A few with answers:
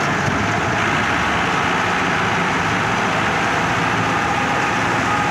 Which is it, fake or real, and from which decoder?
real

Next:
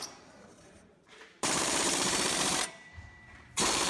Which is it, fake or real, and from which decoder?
fake, vocoder, BigVGAN v2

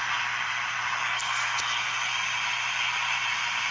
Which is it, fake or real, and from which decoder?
real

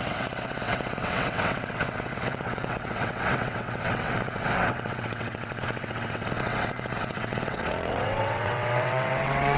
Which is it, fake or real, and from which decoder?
fake, vocoder, WaveNeXt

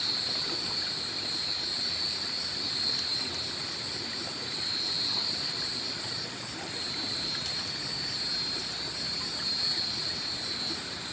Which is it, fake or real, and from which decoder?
real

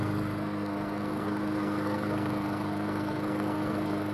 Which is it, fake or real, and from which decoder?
fake, codec, SNAC